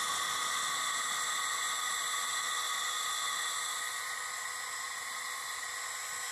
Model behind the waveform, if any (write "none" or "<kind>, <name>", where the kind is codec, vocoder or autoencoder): none